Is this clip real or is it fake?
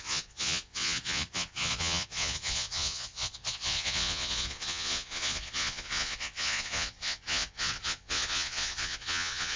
fake